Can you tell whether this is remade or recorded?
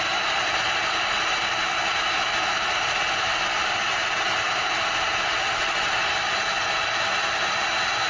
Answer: recorded